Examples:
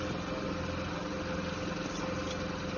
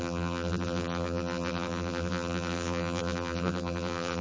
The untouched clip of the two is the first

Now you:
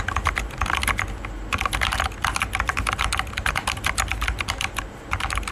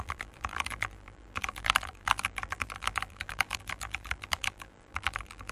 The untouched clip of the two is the first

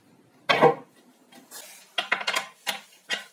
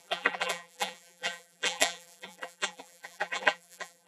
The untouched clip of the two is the first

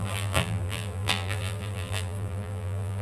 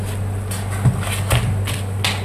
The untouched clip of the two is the second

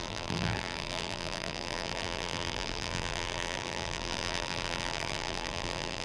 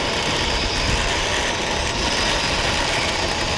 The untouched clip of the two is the second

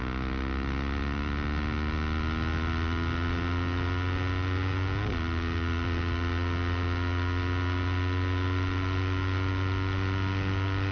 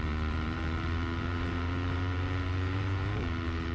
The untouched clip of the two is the first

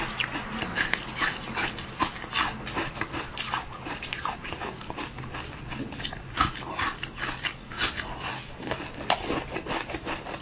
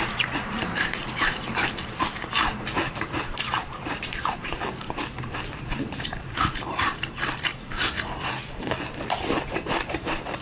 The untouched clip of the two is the first